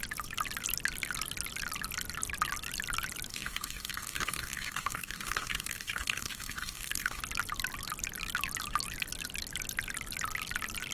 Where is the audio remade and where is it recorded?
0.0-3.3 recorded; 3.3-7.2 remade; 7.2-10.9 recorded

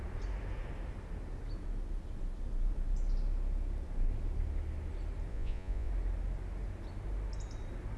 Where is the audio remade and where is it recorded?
0.0-5.3 recorded; 5.3-5.9 remade; 5.9-8.0 recorded

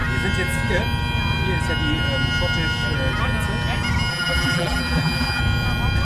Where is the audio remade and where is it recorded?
0.0-4.1 recorded; 4.1-5.4 remade; 5.4-6.0 recorded